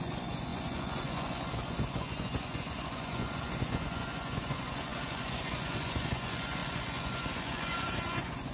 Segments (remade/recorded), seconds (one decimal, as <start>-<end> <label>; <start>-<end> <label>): 0.0-8.5 remade